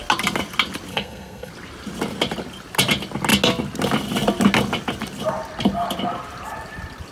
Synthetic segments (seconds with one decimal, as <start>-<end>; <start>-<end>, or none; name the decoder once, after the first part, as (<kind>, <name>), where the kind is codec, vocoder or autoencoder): 0.9-1.5 (codec, SNAC)